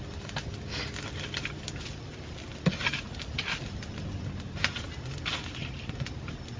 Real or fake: real